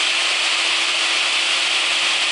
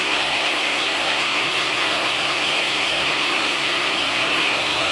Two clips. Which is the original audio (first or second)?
first